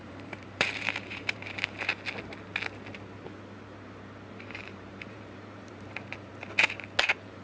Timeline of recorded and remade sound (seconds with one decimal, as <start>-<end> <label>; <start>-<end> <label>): 0.0-1.9 remade; 1.9-4.3 recorded; 4.3-6.3 remade; 6.3-7.0 recorded; 7.0-7.4 remade